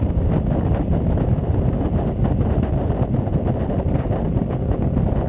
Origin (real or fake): real